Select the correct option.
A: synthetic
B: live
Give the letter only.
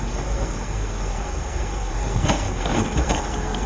A